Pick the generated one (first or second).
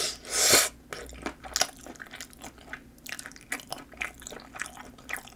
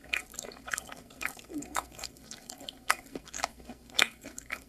second